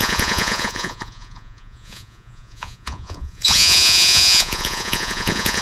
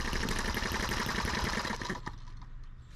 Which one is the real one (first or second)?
second